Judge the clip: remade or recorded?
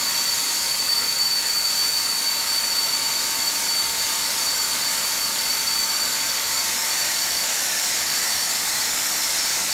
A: remade